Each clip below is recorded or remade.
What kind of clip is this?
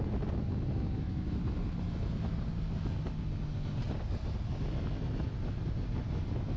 recorded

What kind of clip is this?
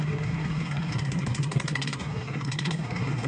remade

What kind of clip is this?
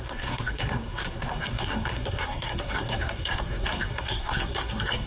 remade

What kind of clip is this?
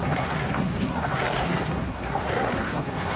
remade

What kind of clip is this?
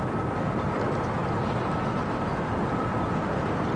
recorded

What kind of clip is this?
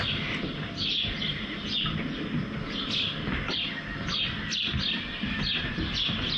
recorded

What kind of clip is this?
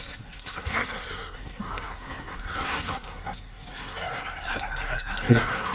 remade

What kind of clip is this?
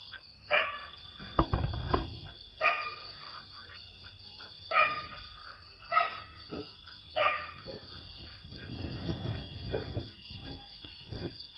remade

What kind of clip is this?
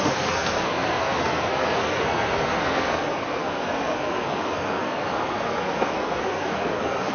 remade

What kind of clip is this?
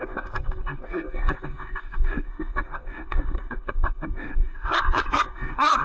remade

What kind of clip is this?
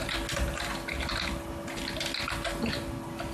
recorded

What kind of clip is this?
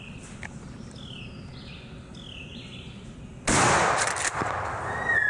recorded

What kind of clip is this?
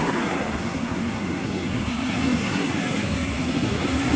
remade